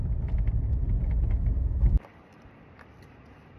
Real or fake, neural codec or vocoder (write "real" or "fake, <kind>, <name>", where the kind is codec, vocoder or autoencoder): real